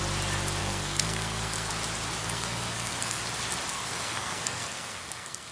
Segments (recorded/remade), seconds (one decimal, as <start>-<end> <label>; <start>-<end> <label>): 0.0-0.6 recorded; 0.6-1.7 remade; 1.7-2.2 recorded; 2.2-3.2 remade; 3.2-3.7 recorded; 3.7-5.5 remade